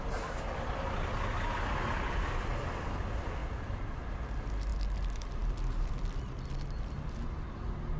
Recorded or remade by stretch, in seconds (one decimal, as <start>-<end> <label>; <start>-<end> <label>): 0.0-4.7 recorded; 4.7-6.2 remade; 6.2-8.0 recorded